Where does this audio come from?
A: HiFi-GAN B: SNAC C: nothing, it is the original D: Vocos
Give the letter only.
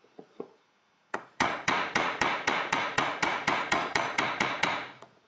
D